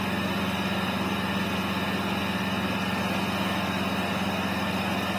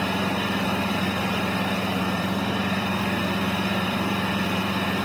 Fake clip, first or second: second